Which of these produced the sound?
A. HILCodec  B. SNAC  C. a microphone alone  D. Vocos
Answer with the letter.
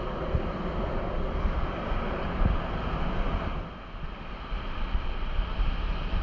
C